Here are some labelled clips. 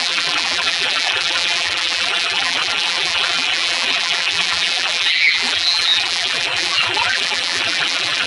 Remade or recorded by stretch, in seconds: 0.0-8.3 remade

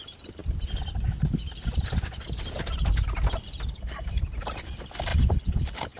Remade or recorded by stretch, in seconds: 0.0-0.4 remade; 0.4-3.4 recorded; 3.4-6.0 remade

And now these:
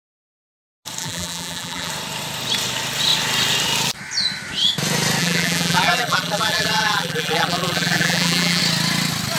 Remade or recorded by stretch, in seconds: 0.0-1.0 recorded; 1.0-1.9 remade; 1.9-5.2 recorded; 5.2-8.6 remade; 8.6-9.4 recorded